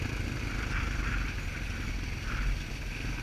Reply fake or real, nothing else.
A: real